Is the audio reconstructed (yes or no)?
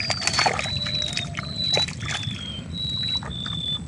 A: no